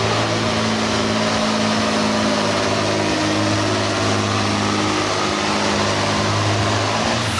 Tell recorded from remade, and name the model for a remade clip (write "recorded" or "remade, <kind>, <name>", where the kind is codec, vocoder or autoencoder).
recorded